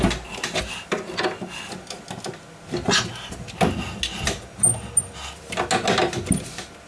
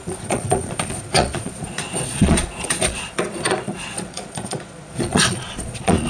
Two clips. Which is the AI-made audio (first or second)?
second